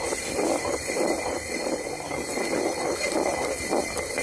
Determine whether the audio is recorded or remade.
recorded